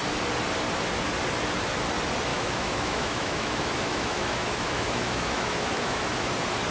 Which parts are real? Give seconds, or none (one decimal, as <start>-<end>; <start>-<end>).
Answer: 0.0-2.3; 6.3-6.7